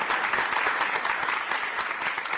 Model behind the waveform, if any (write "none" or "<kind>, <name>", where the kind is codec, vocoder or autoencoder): none